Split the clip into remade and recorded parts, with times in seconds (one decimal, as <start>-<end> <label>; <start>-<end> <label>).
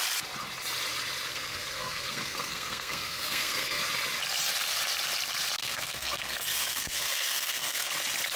0.0-1.3 recorded; 1.3-3.8 remade; 3.8-5.6 recorded; 5.6-7.9 remade; 7.9-8.4 recorded